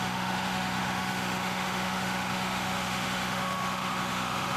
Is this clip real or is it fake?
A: fake